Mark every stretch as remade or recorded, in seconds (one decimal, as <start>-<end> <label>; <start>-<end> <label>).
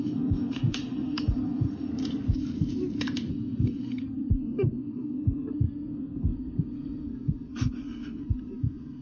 0.0-1.9 remade; 1.9-3.3 recorded; 3.3-9.0 remade